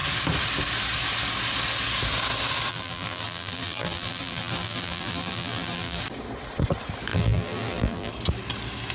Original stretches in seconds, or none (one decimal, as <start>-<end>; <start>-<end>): 0.0-2.7; 6.0-7.1; 8.1-8.9